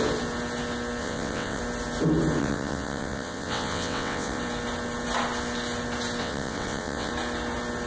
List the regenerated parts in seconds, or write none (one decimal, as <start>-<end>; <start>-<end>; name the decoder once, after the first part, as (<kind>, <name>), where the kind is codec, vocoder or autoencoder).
1.0-1.6 (vocoder, WaveNeXt); 2.4-4.4; 6.2-7.1